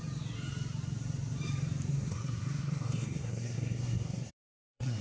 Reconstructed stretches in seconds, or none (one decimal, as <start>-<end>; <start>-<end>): 1.9-5.0